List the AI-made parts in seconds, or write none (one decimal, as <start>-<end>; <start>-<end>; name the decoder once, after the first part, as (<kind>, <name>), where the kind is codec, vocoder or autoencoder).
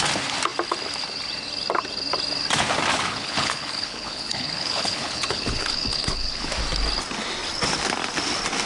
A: 2.9-6.5 (codec, HILCodec)